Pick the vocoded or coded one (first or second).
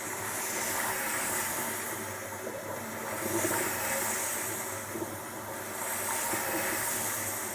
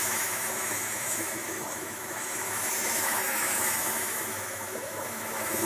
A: second